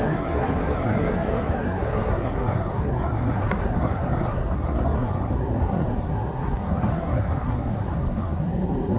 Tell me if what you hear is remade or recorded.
remade